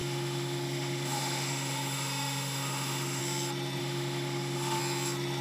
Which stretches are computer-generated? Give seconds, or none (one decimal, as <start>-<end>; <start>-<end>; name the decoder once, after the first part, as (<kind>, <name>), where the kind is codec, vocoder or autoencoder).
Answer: 0.0-3.2 (autoencoder, DAC-VAE); 3.8-4.8